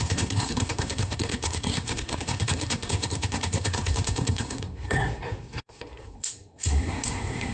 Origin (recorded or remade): remade